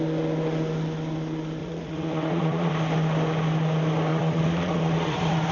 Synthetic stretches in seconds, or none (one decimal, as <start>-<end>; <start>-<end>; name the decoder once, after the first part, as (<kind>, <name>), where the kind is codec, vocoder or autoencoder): 1.6-2.7 (vocoder, Vocos); 4.1-5.5

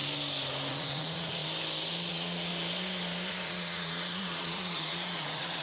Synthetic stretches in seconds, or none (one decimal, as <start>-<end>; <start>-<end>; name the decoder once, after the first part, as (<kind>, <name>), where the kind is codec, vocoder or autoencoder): 0.7-1.4 (vocoder, Vocos); 2.1-2.5; 3.3-5.6

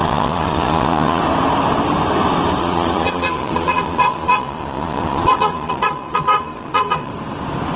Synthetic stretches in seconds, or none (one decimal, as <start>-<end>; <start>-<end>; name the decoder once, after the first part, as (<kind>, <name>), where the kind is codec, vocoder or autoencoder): 0.0-1.2 (vocoder, Vocos); 2.6-7.1

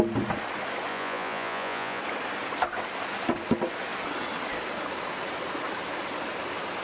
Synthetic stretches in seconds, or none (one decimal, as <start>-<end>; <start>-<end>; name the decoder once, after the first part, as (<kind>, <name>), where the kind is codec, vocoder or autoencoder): 0.9-2.0 (vocoder, Vocos)

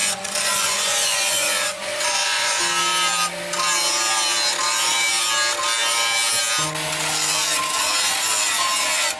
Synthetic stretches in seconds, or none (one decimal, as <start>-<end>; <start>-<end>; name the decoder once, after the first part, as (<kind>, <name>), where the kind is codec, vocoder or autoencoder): 0.0-2.6 (vocoder, Vocos)

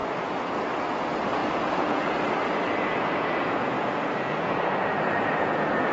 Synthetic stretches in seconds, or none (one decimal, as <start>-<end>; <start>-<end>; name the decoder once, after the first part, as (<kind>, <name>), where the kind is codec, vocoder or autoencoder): 0.0-0.6 (vocoder, Vocos); 1.4-2.1; 2.8-5.9

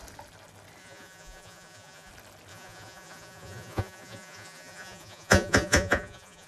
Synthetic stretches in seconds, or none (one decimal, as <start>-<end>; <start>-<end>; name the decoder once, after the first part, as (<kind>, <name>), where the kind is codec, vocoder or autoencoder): 0.8-2.1 (vocoder, Vocos); 2.5-6.5